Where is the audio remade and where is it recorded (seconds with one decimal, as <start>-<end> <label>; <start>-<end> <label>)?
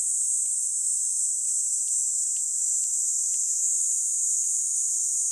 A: 0.0-5.3 recorded